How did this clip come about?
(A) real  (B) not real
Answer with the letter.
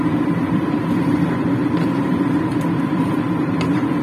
B